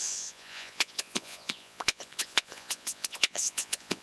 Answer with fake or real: fake